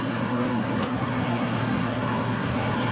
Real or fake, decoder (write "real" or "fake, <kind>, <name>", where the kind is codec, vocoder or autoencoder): fake, codec, SNAC